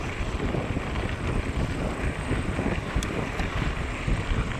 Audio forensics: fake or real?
fake